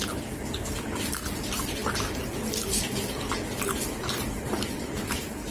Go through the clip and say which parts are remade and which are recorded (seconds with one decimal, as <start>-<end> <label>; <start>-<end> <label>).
0.0-5.5 recorded